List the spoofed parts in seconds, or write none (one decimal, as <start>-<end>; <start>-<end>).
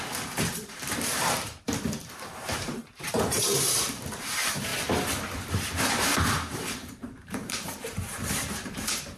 0.0-4.7; 5.4-9.2